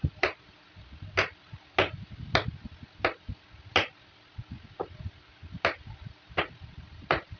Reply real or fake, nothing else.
real